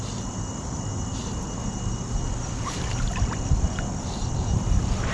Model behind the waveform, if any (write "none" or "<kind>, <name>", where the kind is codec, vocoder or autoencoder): none